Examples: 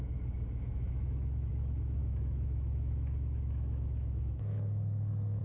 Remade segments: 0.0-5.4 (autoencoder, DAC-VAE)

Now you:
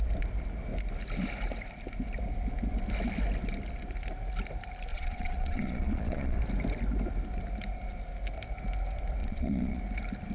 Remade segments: 4.9-6.4 (vocoder, Vocos); 9.2-9.8